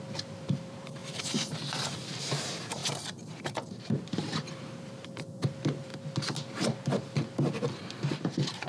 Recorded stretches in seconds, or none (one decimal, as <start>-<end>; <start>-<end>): 2.8-3.4; 5.9-8.1